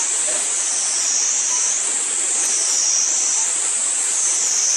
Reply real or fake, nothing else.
real